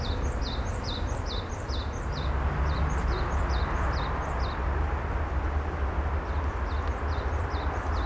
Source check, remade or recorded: recorded